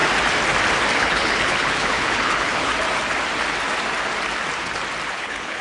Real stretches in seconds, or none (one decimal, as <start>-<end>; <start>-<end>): 0.0-1.0; 2.7-5.1

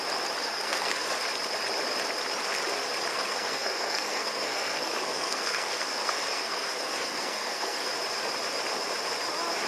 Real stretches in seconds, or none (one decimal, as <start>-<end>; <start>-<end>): 0.0-0.4; 1.2-3.1; 7.9-9.7

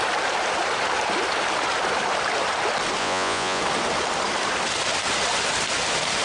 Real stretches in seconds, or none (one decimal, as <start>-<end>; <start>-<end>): 0.0-3.0; 3.6-6.2

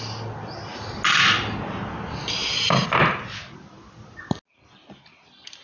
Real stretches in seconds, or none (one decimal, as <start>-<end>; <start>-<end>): 0.0-5.6

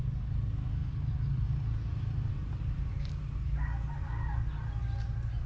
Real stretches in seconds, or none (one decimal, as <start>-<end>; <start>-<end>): 0.0-0.8; 2.3-5.5

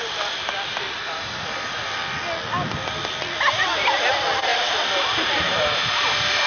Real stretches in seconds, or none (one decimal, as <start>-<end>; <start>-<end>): 0.0-6.5

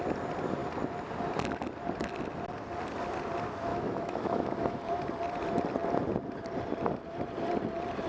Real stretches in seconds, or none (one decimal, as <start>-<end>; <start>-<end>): 0.0-3.7; 4.8-8.1